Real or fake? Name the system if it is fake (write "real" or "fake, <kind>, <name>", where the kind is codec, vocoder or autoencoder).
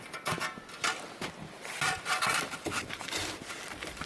real